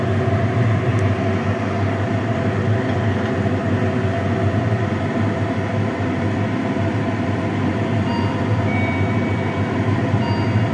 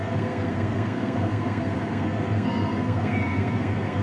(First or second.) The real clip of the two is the first